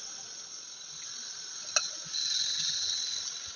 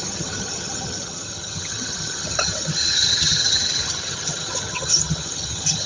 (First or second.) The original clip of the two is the first